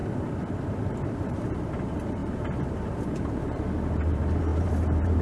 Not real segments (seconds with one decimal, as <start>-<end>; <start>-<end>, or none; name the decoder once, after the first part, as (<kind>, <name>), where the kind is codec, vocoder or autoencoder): 0.6-5.2 (vocoder, BigVGAN v2)